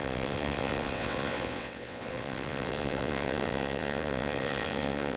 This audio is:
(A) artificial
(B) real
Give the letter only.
A